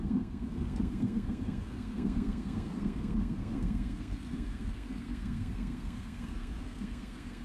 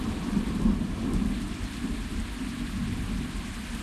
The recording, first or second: second